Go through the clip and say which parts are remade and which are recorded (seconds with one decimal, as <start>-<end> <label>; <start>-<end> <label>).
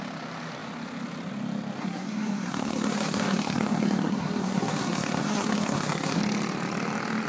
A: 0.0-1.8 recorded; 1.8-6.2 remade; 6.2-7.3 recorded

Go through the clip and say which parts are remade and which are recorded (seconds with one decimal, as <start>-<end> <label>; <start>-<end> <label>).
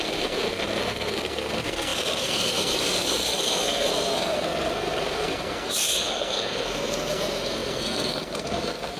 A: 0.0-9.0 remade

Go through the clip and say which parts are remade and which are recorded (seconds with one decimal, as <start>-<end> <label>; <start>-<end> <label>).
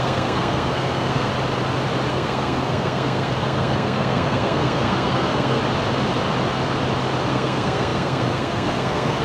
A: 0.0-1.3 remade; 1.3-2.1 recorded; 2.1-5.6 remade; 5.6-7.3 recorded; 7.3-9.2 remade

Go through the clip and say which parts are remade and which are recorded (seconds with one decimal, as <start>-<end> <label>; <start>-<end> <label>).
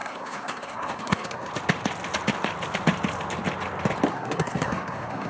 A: 0.0-1.5 remade; 1.5-4.1 recorded; 4.1-5.3 remade